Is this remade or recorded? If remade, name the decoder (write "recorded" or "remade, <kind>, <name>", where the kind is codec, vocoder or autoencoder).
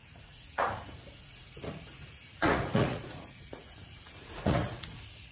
remade, vocoder, Vocos